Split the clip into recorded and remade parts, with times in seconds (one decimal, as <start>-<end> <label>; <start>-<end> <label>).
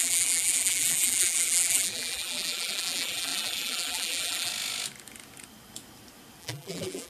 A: 0.0-4.5 remade; 4.5-6.4 recorded; 6.4-7.1 remade